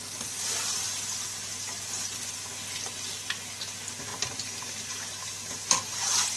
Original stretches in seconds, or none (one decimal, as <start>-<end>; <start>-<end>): 0.0-6.4